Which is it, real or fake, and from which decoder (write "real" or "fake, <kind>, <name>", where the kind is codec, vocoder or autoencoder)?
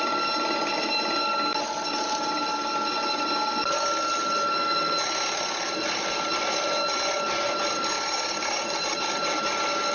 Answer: real